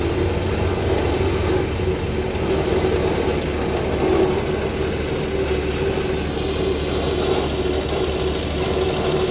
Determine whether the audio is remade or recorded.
recorded